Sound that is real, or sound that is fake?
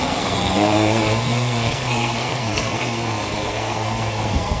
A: fake